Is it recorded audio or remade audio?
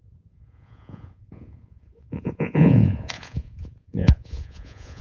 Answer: remade